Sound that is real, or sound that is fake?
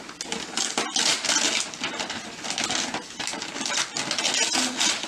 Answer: real